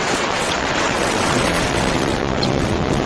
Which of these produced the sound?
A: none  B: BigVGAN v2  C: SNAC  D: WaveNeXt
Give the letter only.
D